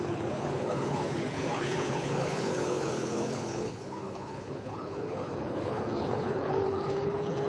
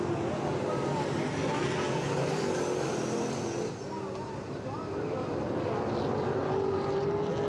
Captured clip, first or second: second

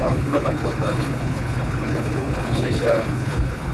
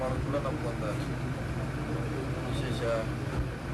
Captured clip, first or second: second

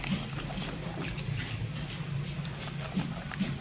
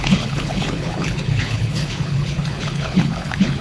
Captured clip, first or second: first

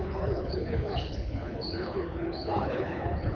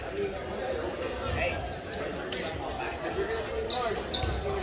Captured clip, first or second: second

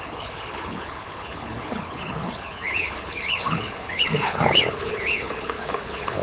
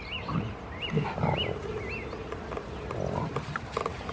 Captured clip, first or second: second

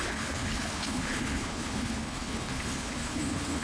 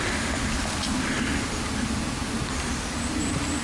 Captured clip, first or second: second